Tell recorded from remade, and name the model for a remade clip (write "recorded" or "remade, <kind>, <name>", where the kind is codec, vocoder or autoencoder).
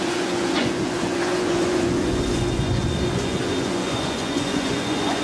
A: remade, vocoder, Vocos